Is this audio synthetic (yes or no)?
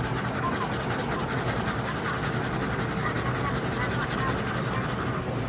no